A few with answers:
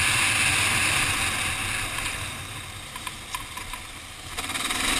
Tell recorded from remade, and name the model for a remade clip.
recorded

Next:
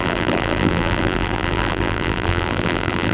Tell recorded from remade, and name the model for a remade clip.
remade, vocoder, BigVGAN v2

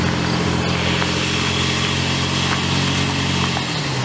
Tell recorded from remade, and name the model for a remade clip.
recorded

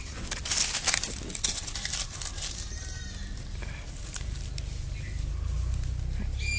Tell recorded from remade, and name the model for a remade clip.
recorded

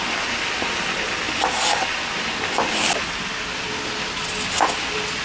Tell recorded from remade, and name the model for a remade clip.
recorded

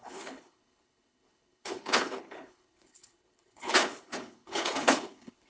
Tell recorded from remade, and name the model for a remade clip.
remade, codec, HILCodec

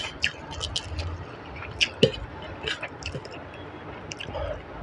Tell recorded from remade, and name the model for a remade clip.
recorded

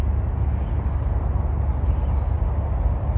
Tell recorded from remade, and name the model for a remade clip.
recorded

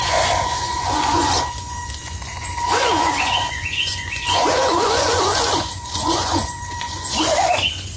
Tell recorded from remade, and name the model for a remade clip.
remade, vocoder, Vocos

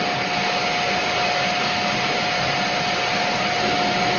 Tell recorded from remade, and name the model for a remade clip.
recorded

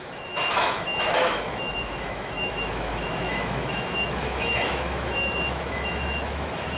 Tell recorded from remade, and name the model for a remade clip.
remade, autoencoder, DAC-VAE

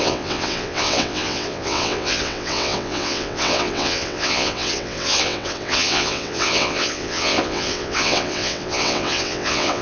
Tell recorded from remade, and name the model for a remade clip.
remade, vocoder, WaveNeXt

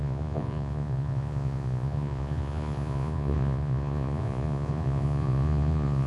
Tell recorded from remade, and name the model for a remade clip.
remade, vocoder, Vocos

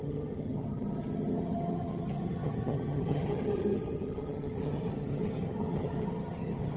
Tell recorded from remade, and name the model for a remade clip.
remade, vocoder, HiFi-GAN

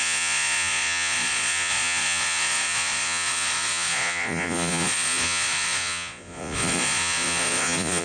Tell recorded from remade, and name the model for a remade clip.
remade, vocoder, Vocos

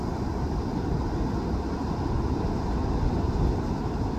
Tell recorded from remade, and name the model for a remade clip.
recorded